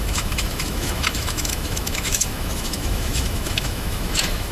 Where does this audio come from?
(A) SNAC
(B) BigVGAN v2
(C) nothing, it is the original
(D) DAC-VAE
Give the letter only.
D